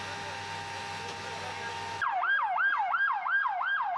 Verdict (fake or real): real